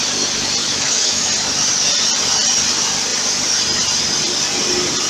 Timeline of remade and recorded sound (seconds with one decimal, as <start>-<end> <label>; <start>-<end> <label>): 0.0-0.6 recorded; 0.6-1.3 remade; 1.3-5.1 recorded